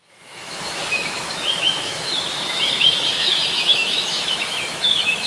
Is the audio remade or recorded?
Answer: remade